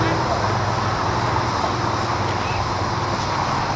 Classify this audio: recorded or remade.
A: recorded